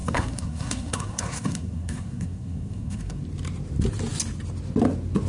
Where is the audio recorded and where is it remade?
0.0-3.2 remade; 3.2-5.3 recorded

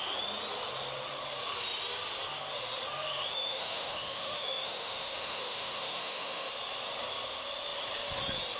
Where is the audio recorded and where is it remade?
0.0-3.3 recorded; 3.3-6.5 remade; 6.5-8.6 recorded

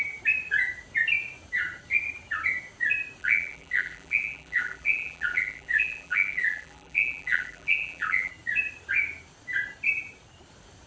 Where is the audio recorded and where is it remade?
0.0-3.2 recorded; 3.2-8.3 remade; 8.3-10.9 recorded

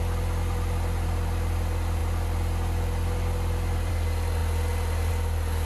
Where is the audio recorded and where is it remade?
0.0-5.7 recorded